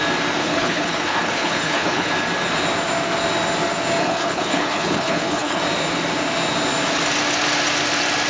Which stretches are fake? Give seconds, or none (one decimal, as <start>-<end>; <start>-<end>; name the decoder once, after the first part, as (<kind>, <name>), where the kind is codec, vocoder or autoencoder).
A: 0.4-2.1 (codec, HILCodec); 4.0-5.6